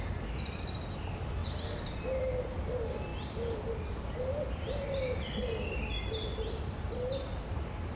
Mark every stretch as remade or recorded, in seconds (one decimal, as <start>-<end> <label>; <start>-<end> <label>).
0.0-8.0 recorded